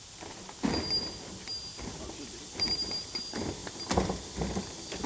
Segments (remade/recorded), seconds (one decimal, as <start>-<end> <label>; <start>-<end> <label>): 0.0-5.1 recorded